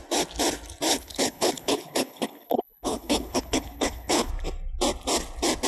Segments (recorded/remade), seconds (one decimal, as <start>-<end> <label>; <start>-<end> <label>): 0.0-0.9 recorded; 0.9-4.3 remade; 4.3-5.7 recorded